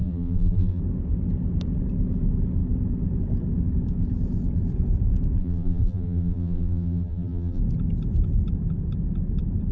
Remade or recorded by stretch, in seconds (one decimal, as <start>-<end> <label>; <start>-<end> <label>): 0.0-0.8 remade; 0.8-5.4 recorded; 5.4-7.6 remade; 7.6-9.7 recorded